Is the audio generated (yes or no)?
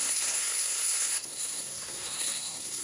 yes